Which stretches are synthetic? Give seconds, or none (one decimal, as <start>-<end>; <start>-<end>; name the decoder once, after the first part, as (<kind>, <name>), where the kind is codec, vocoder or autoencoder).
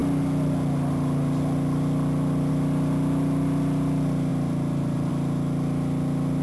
4.3-5.1 (vocoder, BigVGAN v2)